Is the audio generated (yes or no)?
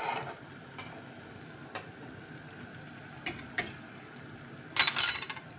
no